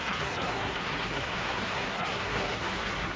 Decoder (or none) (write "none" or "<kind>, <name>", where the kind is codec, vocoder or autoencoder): codec, SNAC